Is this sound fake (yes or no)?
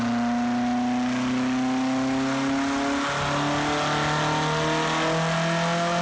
no